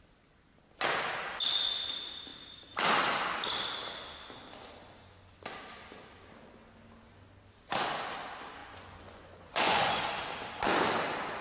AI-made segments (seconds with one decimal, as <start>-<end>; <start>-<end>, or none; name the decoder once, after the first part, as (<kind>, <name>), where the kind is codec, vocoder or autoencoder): 8.6-10.0 (vocoder, Vocos)